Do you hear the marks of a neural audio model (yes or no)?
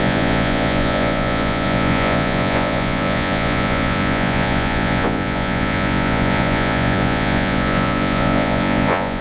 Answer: yes